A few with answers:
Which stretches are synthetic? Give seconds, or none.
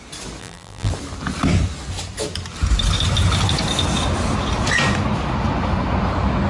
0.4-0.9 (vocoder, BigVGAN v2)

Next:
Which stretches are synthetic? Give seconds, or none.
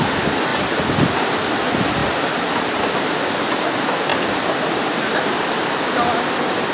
none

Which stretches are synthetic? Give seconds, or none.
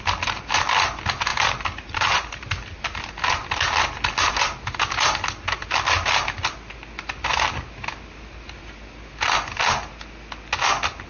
1.3-3.3 (vocoder, BigVGAN v2)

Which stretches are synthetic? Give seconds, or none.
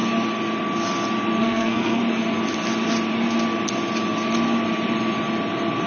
1.4-2.0 (codec, SNAC)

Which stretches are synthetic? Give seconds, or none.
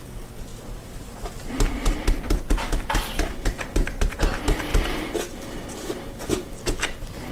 0.5-4.2 (vocoder, BigVGAN v2)